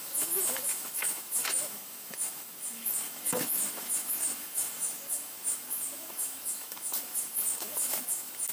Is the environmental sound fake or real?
fake